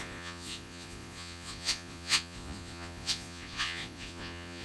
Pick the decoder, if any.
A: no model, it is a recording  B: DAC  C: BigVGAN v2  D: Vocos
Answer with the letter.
D